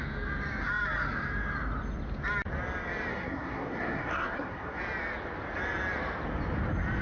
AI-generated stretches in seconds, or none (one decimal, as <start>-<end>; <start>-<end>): 3.1-4.8

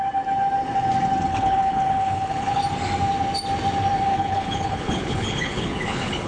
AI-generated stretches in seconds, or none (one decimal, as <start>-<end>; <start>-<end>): 1.3-2.6; 4.1-6.3

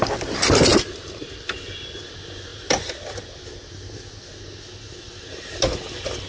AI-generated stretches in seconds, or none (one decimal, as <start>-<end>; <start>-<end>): none

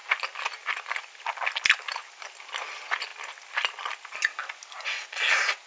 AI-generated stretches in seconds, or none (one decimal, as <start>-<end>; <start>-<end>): none

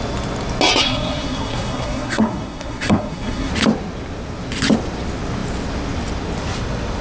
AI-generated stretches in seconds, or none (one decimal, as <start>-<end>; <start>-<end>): 0.8-3.5

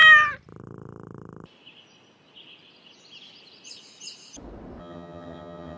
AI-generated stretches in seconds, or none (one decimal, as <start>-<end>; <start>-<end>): 4.8-5.8